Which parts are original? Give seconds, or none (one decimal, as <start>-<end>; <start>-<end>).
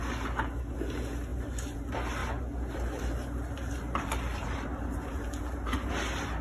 0.0-1.3; 1.8-2.2; 5.9-6.4